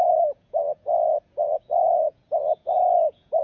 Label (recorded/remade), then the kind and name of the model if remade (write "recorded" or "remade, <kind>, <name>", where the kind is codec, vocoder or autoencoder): remade, vocoder, Vocos